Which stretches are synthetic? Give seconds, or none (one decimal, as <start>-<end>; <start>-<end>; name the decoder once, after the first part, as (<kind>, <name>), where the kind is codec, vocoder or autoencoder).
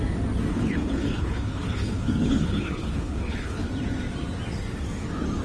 0.5-3.7 (codec, HILCodec)